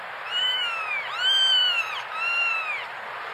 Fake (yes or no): no